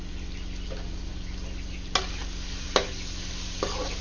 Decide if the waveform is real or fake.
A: real